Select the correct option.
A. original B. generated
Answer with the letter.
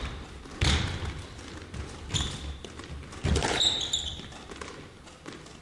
A